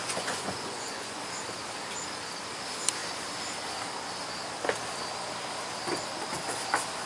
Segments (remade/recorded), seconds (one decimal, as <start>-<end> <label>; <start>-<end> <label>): 0.0-1.2 remade; 1.2-7.1 recorded